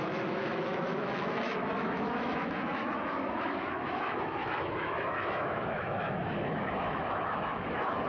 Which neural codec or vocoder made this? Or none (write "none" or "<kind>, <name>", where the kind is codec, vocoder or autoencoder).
autoencoder, DAC-VAE